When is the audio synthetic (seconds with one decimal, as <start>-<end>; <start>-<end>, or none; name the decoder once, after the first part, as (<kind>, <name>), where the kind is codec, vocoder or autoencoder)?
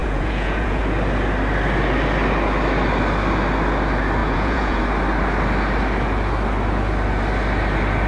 0.0-0.8 (vocoder, Vocos); 4.2-4.8